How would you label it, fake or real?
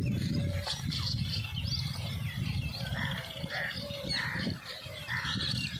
fake